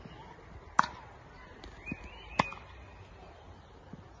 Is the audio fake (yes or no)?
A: no